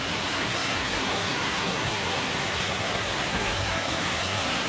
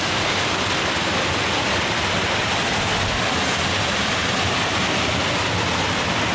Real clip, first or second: second